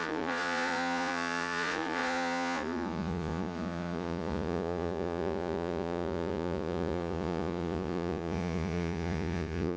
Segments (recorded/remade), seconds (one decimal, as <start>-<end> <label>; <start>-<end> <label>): 0.0-9.8 remade